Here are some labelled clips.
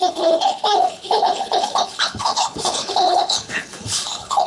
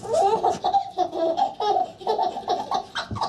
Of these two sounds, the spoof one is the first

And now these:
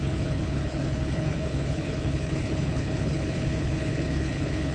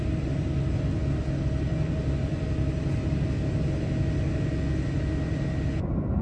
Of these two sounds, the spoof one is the first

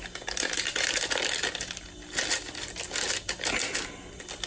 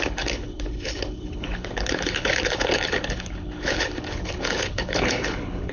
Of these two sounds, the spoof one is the second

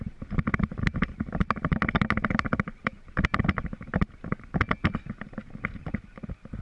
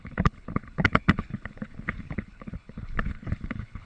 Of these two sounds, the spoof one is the second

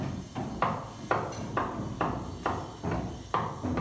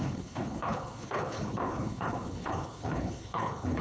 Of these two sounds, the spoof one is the second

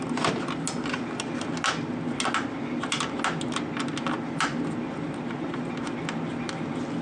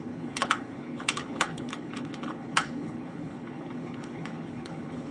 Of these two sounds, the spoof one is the second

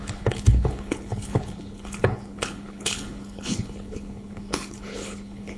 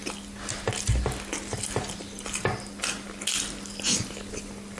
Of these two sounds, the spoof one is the first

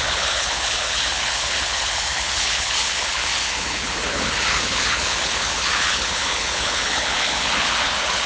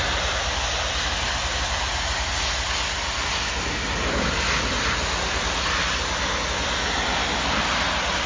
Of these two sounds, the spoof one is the first